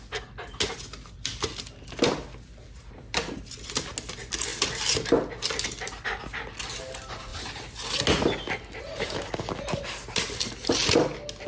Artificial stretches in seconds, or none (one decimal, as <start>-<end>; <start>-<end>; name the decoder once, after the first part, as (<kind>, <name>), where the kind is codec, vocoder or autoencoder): none